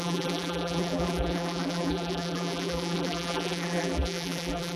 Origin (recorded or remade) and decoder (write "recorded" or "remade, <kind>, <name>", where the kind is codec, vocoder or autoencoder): remade, vocoder, BigVGAN v2